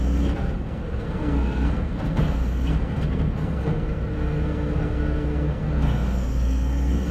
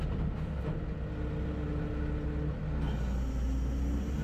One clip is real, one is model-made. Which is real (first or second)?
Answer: second